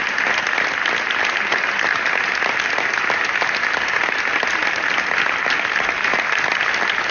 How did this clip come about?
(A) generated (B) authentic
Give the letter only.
B